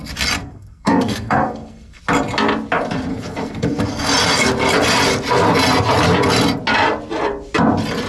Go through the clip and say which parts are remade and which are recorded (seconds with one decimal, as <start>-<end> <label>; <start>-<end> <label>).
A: 0.0-0.4 recorded; 0.4-2.0 remade; 2.0-3.1 recorded; 3.1-4.1 remade; 4.1-8.1 recorded